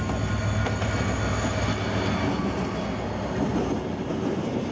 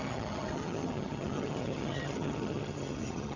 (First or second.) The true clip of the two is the first